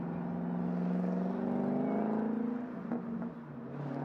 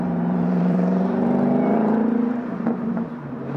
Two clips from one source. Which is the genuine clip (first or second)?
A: first